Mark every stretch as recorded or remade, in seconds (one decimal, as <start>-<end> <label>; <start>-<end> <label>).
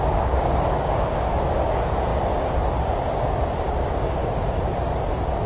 0.0-4.2 remade; 4.2-5.0 recorded; 5.0-5.5 remade